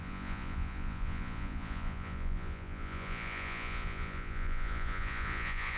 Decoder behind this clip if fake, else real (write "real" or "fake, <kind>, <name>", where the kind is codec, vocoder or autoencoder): fake, vocoder, Vocos